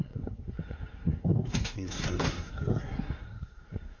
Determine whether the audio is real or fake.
fake